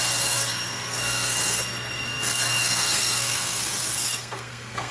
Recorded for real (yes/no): no